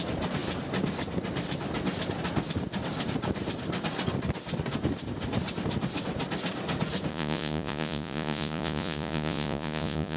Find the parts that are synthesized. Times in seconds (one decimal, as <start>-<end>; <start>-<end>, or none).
7.1-10.2